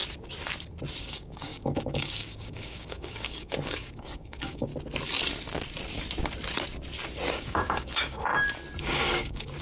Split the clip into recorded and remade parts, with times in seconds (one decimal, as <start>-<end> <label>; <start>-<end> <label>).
0.0-1.0 recorded; 1.0-4.7 remade; 4.7-7.3 recorded; 7.3-8.3 remade; 8.3-8.8 recorded; 8.8-9.6 remade

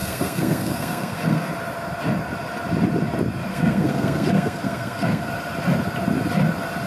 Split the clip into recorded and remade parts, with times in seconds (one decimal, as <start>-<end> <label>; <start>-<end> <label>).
0.0-1.5 remade; 1.5-3.5 recorded; 3.5-5.3 remade; 5.3-6.9 recorded

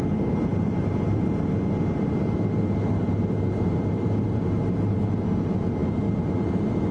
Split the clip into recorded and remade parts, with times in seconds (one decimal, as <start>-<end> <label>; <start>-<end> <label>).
0.0-5.8 remade; 5.8-6.9 recorded

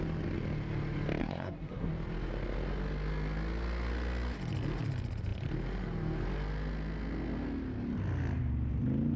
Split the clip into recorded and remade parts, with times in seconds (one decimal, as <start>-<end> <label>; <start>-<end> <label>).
0.0-1.2 recorded; 1.2-1.9 remade; 1.9-9.2 recorded